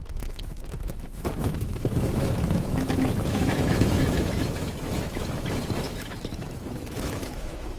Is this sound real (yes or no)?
no